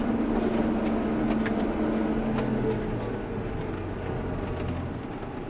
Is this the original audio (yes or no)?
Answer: yes